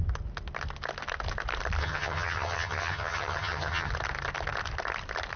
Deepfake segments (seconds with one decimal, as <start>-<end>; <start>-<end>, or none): 1.8-3.9